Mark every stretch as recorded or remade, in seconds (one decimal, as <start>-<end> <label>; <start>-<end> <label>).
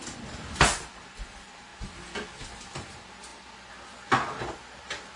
0.0-1.7 remade; 1.7-2.9 recorded; 2.9-3.3 remade; 3.3-4.4 recorded; 4.4-5.2 remade